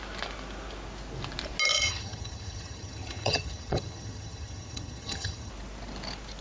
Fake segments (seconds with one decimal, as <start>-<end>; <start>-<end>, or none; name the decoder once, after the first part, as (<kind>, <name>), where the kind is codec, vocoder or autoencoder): 1.7-5.5 (vocoder, HiFi-GAN)